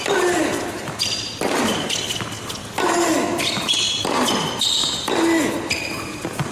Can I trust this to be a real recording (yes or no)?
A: yes